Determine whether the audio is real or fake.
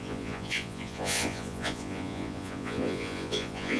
fake